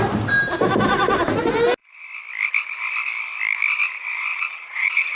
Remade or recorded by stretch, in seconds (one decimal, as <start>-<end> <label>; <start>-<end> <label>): 0.0-4.3 recorded; 4.3-5.2 remade